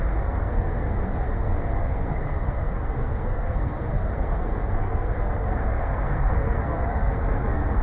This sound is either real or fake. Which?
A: fake